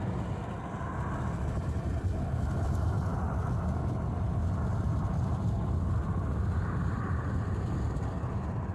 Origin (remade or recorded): recorded